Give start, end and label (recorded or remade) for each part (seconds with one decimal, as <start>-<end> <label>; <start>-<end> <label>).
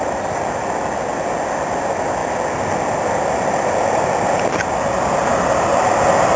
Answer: 0.0-2.2 recorded; 2.2-5.3 remade; 5.3-6.4 recorded